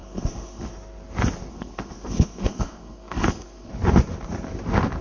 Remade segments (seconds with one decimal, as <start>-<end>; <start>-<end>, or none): 0.0-0.7; 1.5-3.7